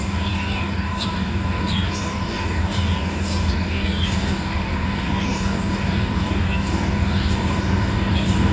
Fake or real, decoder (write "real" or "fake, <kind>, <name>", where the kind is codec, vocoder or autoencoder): fake, codec, DAC